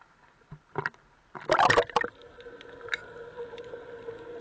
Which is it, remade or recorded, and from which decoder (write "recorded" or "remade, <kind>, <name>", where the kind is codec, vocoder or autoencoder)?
recorded